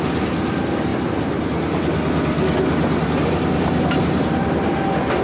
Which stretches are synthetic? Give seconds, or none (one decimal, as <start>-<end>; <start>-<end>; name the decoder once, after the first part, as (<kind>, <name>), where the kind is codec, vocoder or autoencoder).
none

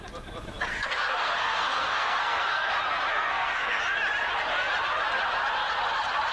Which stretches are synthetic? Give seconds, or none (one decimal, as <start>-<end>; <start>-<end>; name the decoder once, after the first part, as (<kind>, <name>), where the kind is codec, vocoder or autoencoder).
0.7-2.7 (codec, SNAC); 3.1-3.8